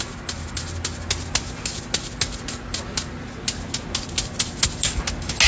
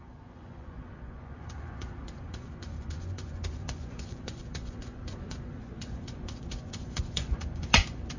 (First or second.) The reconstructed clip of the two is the second